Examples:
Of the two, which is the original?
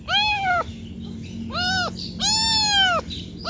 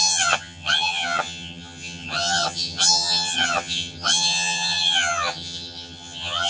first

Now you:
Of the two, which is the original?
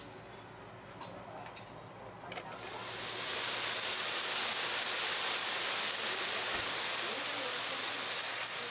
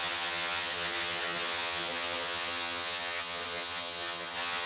first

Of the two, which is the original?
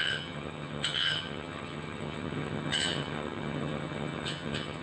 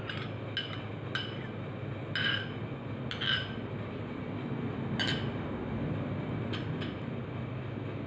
second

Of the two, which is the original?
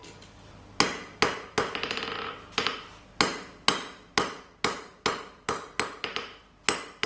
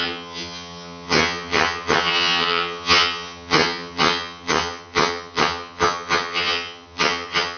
first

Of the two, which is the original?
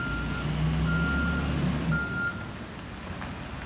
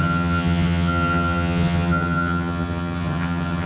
first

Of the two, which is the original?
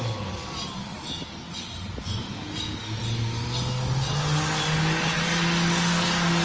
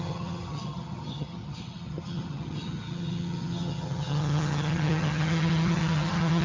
first